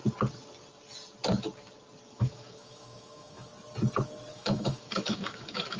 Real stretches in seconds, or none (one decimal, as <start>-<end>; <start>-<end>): 0.0-2.1; 3.5-4.3